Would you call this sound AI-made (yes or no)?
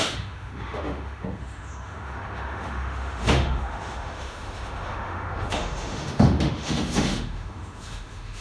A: yes